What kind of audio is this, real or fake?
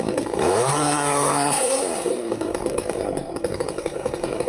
fake